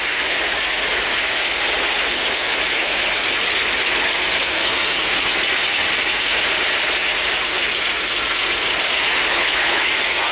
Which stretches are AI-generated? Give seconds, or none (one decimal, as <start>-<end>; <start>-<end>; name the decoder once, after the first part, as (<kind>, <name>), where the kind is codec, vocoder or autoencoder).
9.3-9.9 (codec, HILCodec)